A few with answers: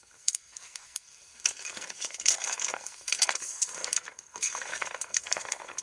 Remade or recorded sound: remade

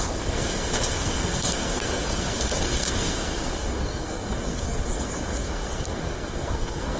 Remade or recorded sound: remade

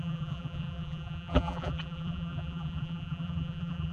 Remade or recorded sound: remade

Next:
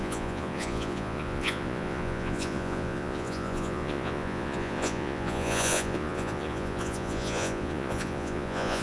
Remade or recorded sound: remade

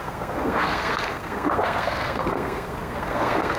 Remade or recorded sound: remade